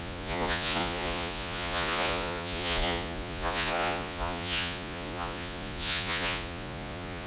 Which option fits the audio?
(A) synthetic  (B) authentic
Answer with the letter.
A